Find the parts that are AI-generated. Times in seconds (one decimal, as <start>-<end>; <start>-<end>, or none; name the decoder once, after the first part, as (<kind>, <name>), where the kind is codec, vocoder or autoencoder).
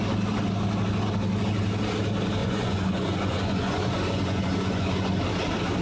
2.4-5.2 (vocoder, Vocos)